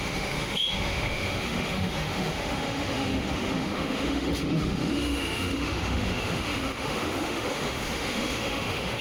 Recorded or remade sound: remade